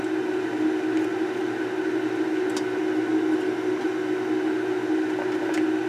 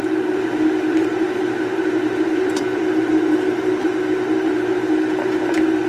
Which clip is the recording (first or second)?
first